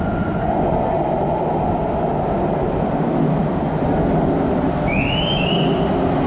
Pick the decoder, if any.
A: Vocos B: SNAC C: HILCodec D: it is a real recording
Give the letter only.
D